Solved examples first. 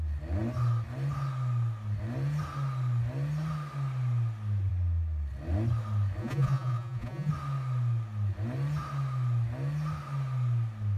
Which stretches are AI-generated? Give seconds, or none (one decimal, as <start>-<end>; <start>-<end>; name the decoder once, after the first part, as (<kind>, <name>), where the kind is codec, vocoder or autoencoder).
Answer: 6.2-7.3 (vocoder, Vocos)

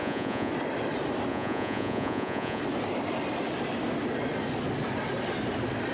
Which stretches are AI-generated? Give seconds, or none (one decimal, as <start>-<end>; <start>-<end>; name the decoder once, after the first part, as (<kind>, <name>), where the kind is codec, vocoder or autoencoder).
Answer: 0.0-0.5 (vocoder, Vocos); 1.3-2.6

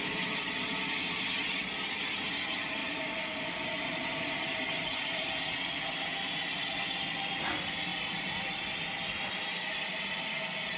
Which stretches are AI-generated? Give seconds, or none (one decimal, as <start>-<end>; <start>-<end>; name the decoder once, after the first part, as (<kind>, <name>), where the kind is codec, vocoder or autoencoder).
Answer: none